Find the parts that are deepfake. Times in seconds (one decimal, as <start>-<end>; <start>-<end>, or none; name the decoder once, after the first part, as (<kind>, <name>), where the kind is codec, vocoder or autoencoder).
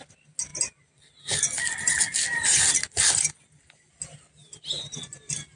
none